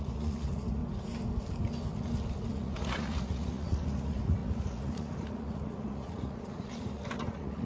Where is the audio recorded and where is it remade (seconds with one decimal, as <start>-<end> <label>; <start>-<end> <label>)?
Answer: 0.0-0.8 remade; 0.8-2.5 recorded; 2.5-7.7 remade